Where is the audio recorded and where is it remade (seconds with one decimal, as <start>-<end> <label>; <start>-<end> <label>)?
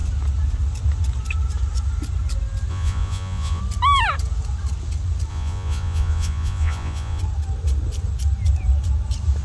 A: 0.0-2.7 recorded; 2.7-3.6 remade; 3.6-5.3 recorded; 5.3-7.2 remade; 7.2-9.4 recorded